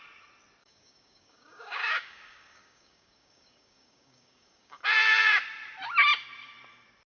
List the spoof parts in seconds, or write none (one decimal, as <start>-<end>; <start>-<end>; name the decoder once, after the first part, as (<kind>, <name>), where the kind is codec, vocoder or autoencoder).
0.6-4.8 (codec, DAC)